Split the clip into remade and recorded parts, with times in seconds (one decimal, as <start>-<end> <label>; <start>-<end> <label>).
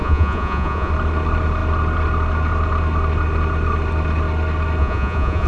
0.0-0.9 remade; 0.9-4.8 recorded; 4.8-5.5 remade